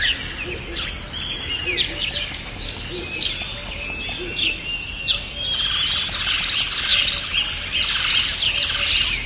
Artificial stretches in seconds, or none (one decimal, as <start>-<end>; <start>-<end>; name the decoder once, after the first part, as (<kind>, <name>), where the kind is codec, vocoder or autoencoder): none